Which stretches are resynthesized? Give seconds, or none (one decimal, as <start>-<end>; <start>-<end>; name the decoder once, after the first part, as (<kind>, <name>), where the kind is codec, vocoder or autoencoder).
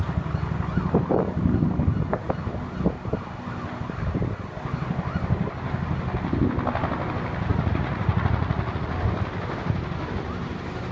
7.5-8.9 (vocoder, Vocos)